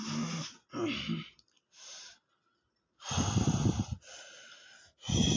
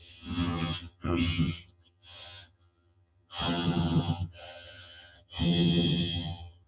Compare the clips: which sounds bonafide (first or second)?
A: first